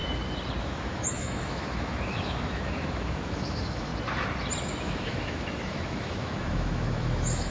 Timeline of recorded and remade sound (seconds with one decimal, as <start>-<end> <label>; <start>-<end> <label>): 0.0-0.6 recorded; 0.6-3.9 remade; 3.9-4.8 recorded; 4.8-7.5 remade